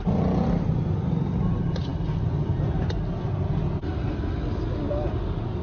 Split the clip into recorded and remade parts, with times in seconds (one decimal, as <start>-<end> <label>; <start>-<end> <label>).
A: 0.0-5.6 recorded